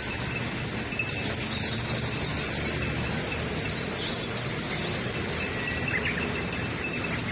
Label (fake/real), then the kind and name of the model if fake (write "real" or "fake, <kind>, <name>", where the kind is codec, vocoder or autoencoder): real